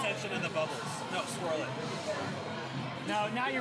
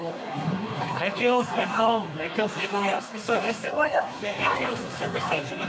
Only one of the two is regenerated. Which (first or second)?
second